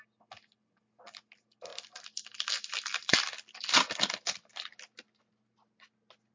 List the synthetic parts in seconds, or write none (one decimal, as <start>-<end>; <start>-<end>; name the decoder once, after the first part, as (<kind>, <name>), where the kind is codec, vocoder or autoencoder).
none